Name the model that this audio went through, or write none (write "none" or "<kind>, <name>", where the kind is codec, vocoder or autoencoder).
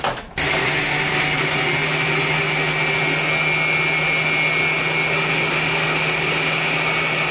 none